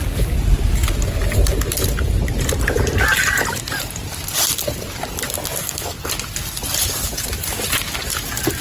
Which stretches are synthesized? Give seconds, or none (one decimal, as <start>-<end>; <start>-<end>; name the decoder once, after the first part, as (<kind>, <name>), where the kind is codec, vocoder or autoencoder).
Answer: 5.6-6.1 (codec, SNAC)